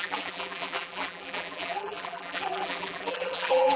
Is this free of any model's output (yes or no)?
no